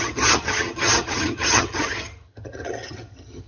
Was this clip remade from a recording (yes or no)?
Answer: yes